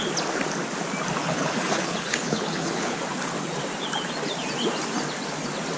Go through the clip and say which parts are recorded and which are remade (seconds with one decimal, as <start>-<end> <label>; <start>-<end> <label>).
0.0-1.2 recorded; 1.2-3.0 remade; 3.0-5.8 recorded